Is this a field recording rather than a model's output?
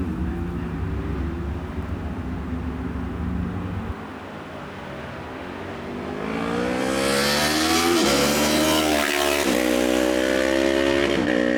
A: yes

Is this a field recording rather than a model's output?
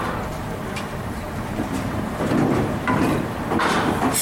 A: no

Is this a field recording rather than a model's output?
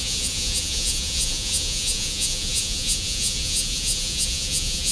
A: no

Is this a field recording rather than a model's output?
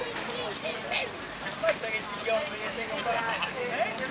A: yes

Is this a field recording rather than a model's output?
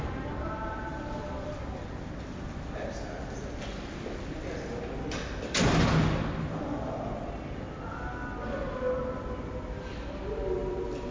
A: yes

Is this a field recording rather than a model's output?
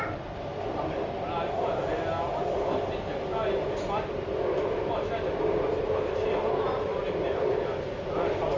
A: yes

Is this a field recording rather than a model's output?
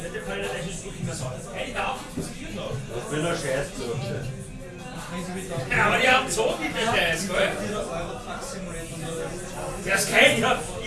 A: yes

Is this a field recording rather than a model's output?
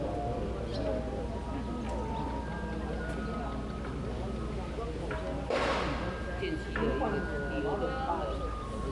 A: yes